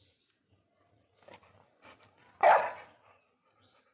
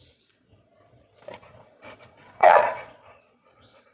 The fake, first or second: second